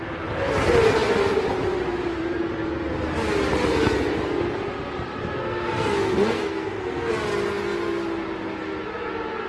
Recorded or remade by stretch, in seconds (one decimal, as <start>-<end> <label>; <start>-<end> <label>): 0.0-5.3 recorded; 5.3-7.1 remade; 7.1-9.5 recorded